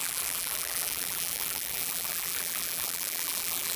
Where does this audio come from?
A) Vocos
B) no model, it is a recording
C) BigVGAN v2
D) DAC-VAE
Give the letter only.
C